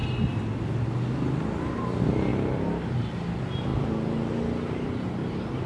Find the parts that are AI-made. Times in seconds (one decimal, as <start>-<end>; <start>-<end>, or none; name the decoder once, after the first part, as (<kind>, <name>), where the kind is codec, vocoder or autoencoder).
none